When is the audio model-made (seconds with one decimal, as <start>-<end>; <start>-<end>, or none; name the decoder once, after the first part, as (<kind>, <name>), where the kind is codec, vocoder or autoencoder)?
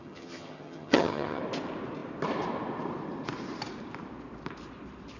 0.0-1.4 (vocoder, HiFi-GAN)